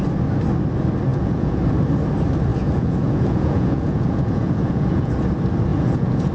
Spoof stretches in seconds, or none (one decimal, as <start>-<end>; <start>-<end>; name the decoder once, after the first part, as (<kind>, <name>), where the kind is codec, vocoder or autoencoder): 1.1-1.6 (vocoder, Vocos); 2.5-5.1; 5.7-6.3